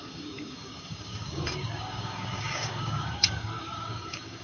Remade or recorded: remade